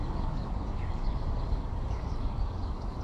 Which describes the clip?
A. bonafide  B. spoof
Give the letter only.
B